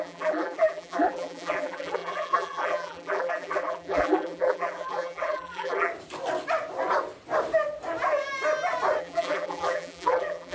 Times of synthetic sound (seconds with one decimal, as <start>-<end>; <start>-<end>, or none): 0.0-5.9; 9.0-10.5